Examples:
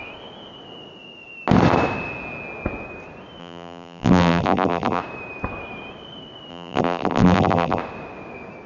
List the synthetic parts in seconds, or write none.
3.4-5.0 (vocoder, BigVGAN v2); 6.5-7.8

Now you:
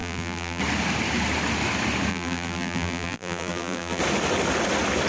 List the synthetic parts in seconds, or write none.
0.0-0.6 (vocoder, BigVGAN v2); 2.1-4.0

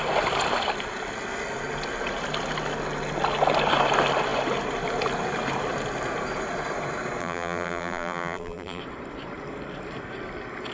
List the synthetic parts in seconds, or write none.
7.2-8.8 (vocoder, BigVGAN v2)

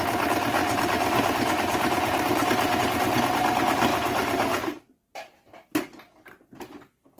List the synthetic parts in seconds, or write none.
0.6-2.8 (vocoder, BigVGAN v2); 3.9-5.8

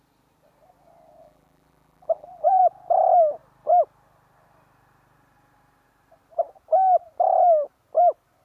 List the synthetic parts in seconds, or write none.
1.2-2.6 (vocoder, BigVGAN v2)

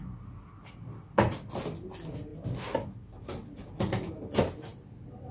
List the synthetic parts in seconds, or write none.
none